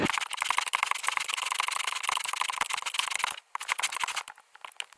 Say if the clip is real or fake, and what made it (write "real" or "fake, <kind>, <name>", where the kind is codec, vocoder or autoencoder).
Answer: real